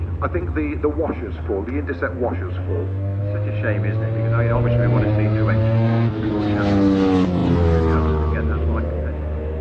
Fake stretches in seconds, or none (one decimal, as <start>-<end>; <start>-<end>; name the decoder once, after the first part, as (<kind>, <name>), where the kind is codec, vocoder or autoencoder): 2.7-3.2 (codec, SNAC); 5.6-6.3